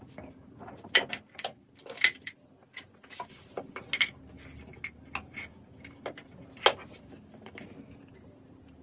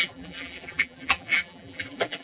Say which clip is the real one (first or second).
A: first